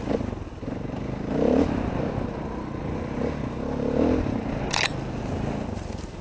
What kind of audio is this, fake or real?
real